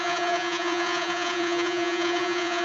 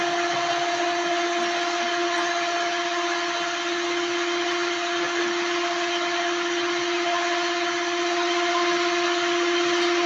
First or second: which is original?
second